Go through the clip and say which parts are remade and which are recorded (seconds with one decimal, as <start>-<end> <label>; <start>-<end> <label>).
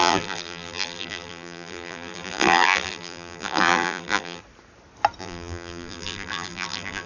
0.0-4.4 remade; 4.4-5.2 recorded; 5.2-7.1 remade